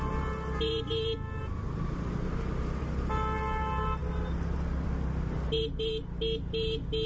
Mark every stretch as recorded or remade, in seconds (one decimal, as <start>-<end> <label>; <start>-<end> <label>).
0.0-7.1 recorded